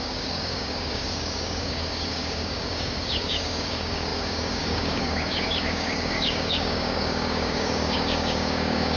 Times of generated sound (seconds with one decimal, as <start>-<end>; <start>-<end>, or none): 0.0-9.0